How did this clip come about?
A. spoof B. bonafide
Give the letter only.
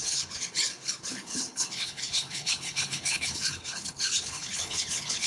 A